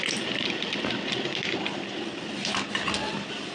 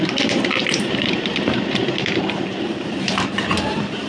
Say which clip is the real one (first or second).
first